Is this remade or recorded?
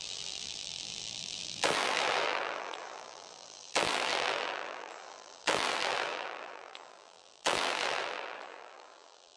remade